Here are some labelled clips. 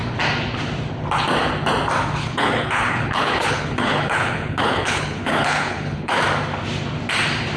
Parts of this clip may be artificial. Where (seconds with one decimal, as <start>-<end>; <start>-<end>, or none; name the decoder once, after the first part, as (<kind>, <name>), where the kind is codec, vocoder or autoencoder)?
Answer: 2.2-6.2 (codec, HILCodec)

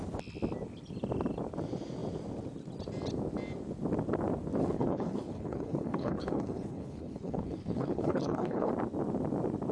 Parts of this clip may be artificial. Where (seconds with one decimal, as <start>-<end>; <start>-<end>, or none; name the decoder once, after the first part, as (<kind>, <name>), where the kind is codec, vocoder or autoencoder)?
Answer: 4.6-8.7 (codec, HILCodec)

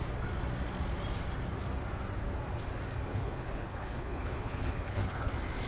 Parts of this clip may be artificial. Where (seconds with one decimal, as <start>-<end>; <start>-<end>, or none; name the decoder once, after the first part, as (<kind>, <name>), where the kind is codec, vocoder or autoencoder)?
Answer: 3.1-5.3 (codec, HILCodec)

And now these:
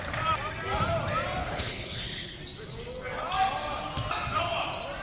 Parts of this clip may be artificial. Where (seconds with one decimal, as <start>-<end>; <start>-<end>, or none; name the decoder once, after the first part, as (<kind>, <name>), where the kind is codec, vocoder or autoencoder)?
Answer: 1.4-2.4 (codec, HILCodec)